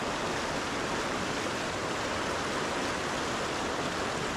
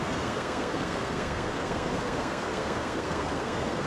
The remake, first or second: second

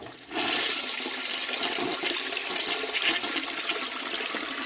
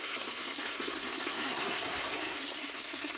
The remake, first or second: second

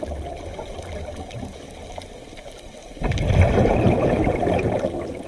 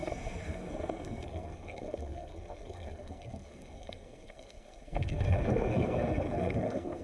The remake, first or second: second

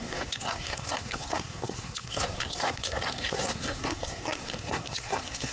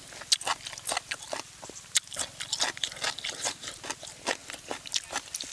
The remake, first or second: first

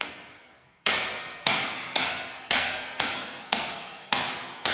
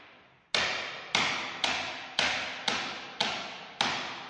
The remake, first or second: first